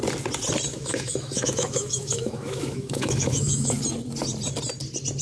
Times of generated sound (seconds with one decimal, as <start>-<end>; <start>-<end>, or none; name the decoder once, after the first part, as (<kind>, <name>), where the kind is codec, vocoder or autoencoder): 0.7-3.8 (autoencoder, DAC-VAE)